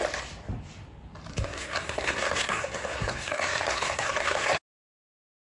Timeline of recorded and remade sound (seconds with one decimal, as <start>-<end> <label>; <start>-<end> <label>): 0.0-1.3 recorded; 1.3-4.6 remade; 4.6-5.5 recorded